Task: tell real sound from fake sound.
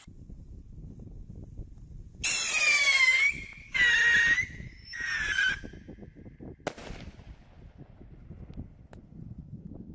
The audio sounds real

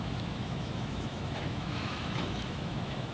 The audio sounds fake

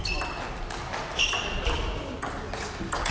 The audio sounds real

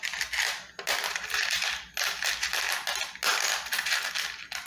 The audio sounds real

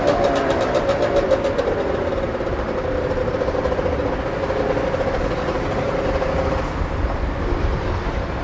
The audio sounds real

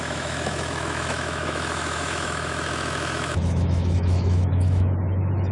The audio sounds fake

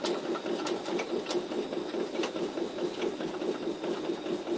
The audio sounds real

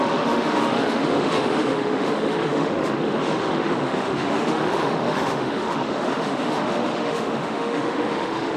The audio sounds fake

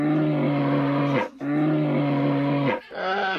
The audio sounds real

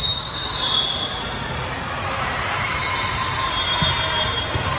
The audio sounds real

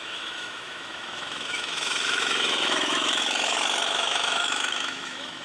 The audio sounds fake